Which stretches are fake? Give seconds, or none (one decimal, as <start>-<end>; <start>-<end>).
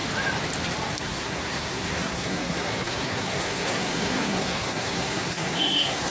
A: 1.0-6.1